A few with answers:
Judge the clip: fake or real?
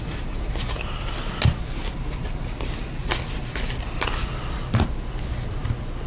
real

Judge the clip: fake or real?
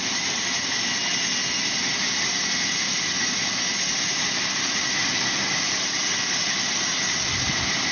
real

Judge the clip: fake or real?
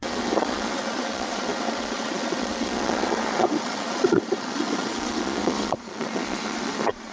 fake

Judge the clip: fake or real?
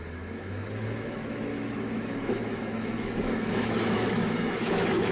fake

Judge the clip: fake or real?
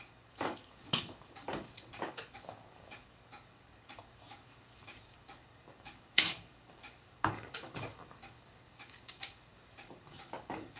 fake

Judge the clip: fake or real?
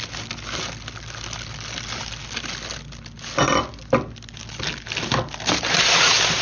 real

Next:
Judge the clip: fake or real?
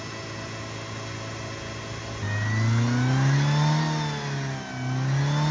real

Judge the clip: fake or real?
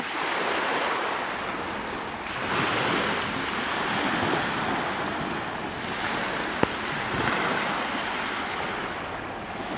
real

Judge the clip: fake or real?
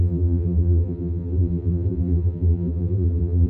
fake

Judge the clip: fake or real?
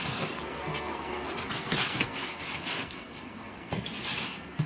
fake